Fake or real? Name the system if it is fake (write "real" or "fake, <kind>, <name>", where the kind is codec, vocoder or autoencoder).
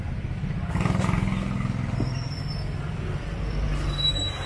real